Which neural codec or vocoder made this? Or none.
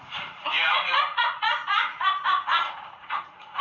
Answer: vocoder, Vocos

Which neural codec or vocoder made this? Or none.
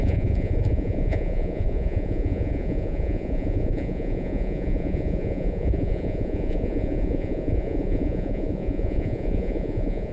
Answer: vocoder, Vocos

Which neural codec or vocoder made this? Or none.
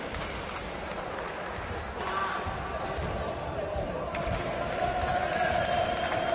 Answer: none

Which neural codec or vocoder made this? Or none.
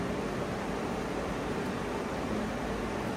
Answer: none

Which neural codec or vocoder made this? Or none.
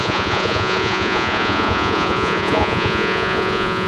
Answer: vocoder, Vocos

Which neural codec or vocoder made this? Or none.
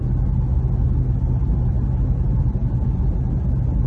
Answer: none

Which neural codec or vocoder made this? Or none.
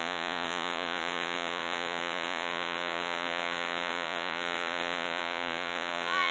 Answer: vocoder, Vocos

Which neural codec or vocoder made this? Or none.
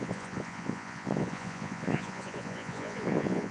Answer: vocoder, Vocos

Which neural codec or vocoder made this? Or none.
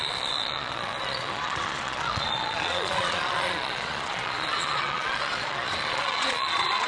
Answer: vocoder, Vocos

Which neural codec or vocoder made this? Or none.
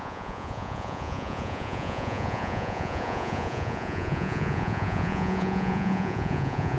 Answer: vocoder, Vocos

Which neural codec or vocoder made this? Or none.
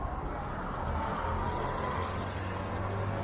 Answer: none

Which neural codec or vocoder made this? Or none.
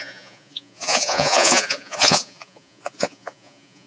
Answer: vocoder, Vocos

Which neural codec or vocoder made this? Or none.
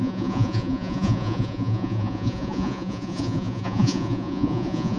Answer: vocoder, Vocos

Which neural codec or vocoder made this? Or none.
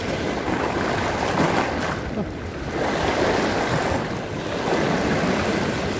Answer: none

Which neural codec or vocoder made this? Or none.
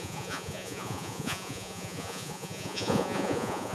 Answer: vocoder, Vocos